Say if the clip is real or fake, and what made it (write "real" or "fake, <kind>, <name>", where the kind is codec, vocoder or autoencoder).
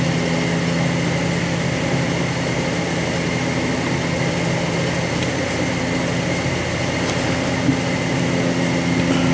real